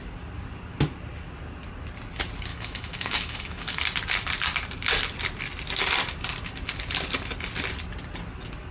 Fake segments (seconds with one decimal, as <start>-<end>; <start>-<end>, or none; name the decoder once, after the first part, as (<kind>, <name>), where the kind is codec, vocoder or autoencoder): 2.5-3.8 (autoencoder, DAC-VAE)